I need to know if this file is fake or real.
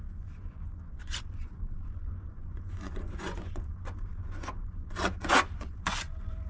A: fake